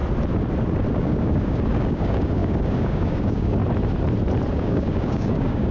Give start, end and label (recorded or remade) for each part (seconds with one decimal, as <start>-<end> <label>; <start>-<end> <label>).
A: 0.0-0.9 recorded; 0.9-3.6 remade; 3.6-4.5 recorded; 4.5-5.7 remade